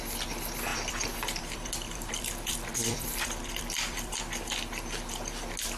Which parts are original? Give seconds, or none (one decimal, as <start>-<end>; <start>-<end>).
0.0-0.7; 4.2-5.8

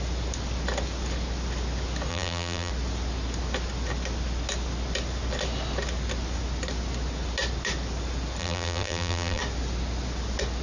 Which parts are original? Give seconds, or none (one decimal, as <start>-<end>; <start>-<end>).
0.0-2.1; 2.7-8.4; 9.4-10.6

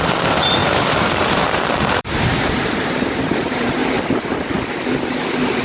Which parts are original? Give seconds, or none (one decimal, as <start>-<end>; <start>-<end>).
3.8-5.6

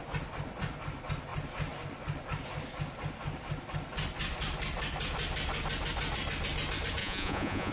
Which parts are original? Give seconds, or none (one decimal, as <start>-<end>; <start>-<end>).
0.0-7.0